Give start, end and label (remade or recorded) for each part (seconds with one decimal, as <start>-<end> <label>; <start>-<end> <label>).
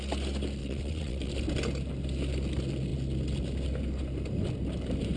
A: 0.0-0.6 recorded; 0.6-1.3 remade; 1.3-5.2 recorded